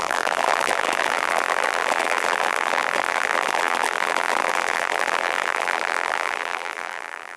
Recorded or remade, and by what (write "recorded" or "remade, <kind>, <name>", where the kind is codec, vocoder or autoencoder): remade, vocoder, BigVGAN v2